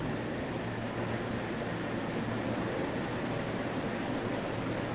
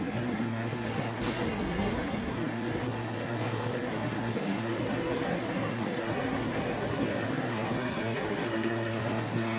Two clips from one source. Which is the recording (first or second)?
first